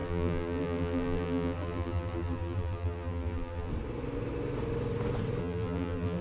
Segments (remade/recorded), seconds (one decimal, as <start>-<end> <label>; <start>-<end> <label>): 0.0-3.7 remade; 3.7-5.4 recorded; 5.4-6.2 remade